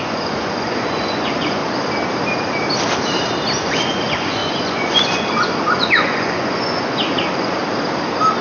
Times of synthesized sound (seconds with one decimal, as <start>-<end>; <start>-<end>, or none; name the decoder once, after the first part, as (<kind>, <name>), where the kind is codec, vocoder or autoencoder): 0.0-1.6 (vocoder, Vocos); 3.6-7.6